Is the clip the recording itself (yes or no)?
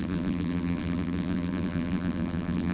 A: no